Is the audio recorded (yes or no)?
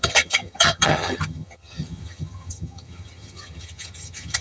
no